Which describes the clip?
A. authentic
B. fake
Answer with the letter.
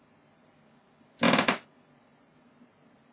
A